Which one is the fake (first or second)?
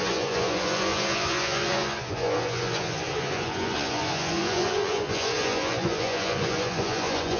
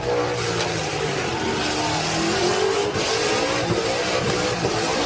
first